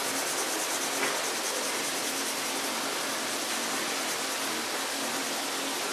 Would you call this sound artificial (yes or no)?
no